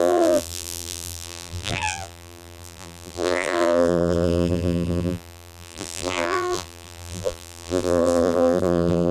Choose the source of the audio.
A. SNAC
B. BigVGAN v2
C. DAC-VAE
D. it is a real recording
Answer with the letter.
B